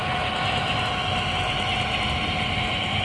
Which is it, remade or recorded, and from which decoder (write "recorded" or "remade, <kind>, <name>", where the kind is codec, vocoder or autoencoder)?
recorded